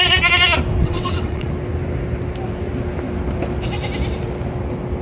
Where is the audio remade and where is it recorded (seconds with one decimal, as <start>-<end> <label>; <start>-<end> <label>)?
0.0-0.8 recorded; 0.8-1.5 remade; 1.5-5.0 recorded